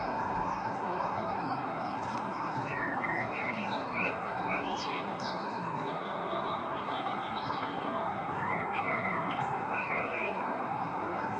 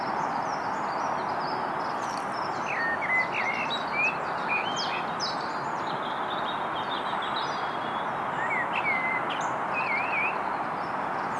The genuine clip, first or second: second